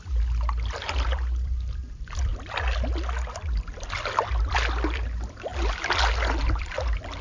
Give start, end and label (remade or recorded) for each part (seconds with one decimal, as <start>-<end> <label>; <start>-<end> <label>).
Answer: 0.0-2.3 remade; 2.3-4.3 recorded; 4.3-5.5 remade; 5.5-6.4 recorded; 6.4-7.2 remade